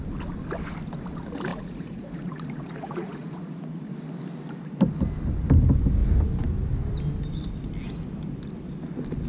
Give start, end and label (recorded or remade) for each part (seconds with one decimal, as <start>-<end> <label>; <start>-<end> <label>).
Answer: 0.0-1.5 recorded; 1.5-3.9 remade; 3.9-9.3 recorded